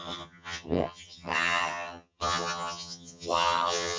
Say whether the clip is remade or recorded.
remade